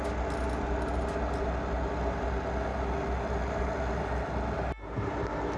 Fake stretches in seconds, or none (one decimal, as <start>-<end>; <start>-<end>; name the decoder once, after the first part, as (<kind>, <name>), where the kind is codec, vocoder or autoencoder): none

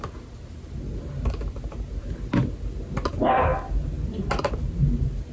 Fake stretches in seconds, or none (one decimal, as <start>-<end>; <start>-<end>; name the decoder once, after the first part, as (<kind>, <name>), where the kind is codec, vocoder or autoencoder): none